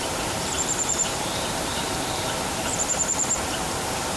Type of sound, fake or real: fake